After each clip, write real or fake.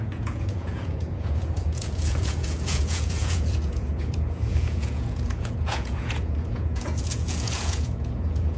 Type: fake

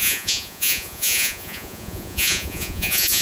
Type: fake